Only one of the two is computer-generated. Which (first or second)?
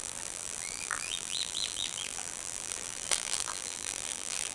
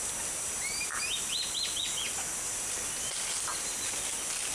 first